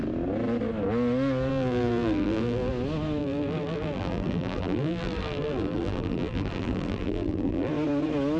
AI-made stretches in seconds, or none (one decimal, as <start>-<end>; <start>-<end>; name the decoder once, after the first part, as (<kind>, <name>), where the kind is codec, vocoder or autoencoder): 1.5-2.7 (vocoder, BigVGAN v2); 3.2-7.7